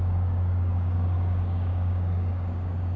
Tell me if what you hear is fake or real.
fake